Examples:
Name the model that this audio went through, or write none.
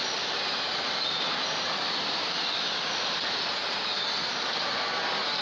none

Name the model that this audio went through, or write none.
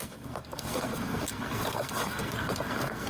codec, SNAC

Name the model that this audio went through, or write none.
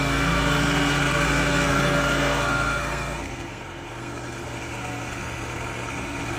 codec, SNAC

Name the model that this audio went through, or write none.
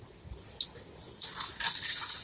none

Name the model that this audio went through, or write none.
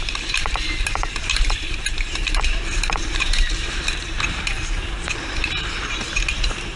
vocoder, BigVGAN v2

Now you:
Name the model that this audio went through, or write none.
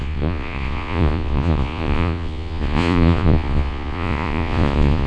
vocoder, Vocos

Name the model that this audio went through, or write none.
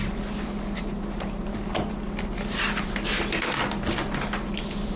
none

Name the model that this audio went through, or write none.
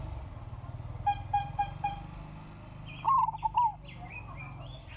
none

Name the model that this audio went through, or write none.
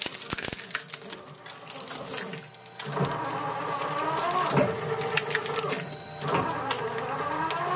none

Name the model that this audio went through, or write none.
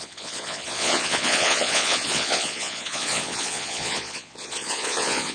vocoder, Vocos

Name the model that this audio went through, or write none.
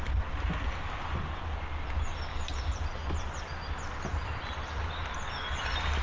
none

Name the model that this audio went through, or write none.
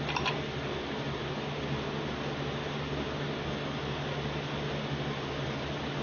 none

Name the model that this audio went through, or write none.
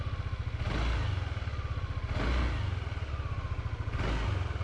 none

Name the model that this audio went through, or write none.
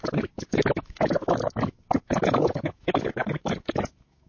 autoencoder, DAC-VAE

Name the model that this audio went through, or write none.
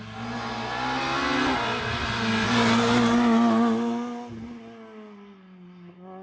none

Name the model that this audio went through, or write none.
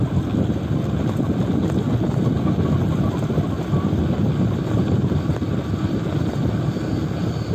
none